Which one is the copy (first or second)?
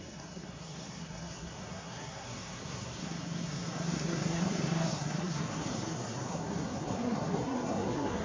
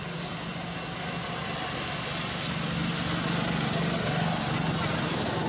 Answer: first